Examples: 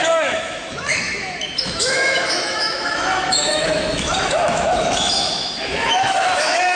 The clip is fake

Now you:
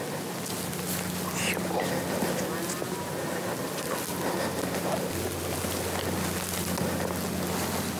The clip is real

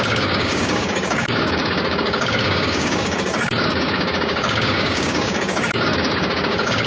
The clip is fake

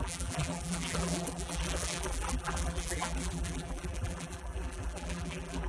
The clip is fake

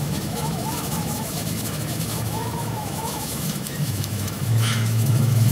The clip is fake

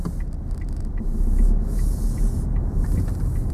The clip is real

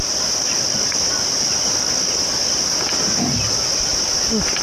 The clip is real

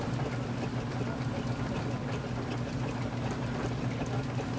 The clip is real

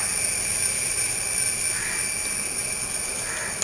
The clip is real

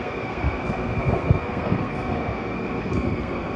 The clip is fake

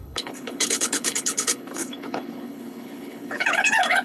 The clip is fake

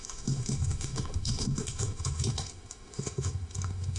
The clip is fake